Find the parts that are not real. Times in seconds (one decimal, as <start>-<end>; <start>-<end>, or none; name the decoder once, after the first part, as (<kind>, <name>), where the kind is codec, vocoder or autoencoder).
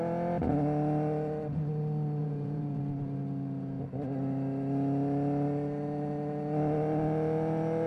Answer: 2.2-2.8 (vocoder, Vocos)